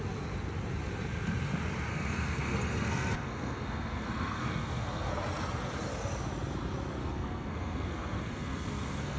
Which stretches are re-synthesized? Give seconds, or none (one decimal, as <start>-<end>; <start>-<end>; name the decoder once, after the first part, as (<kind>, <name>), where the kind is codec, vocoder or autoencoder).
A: 1.9-5.1 (codec, SNAC); 7.0-9.2